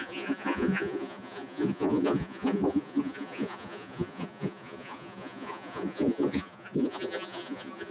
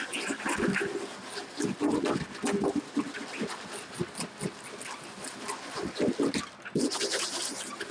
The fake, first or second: first